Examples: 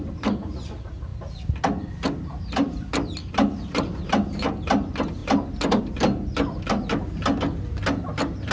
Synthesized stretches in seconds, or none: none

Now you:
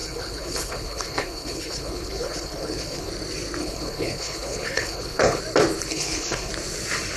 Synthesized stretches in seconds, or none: 0.0-3.1; 3.6-5.4; 5.9-6.5

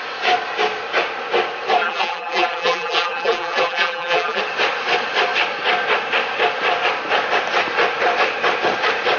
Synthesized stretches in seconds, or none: 1.8-4.4

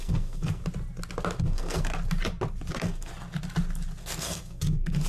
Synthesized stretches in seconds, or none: 0.0-0.6; 1.4-1.9; 2.7-3.1; 4.0-5.1

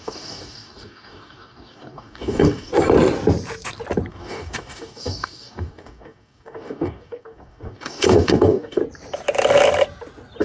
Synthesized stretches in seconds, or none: 0.0-2.7; 4.1-8.8

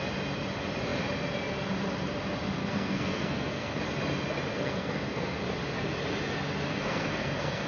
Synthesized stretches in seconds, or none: 2.6-3.8; 4.5-5.4; 6.7-7.7

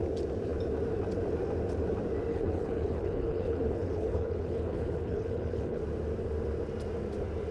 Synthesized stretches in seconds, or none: 2.3-5.8